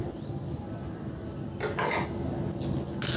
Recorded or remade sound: recorded